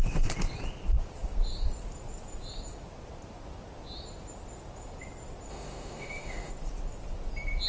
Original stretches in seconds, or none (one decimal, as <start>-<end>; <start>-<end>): 0.0-5.5; 6.5-7.7